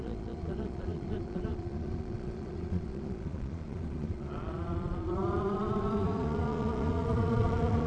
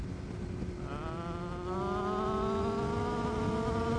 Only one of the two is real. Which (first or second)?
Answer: second